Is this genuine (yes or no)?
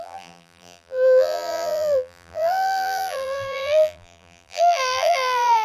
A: no